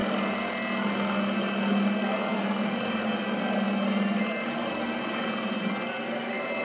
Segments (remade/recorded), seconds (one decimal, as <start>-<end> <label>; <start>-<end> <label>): 0.0-6.6 recorded